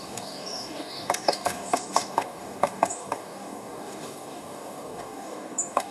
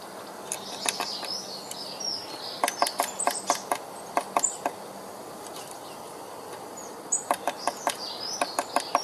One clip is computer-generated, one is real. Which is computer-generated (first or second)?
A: first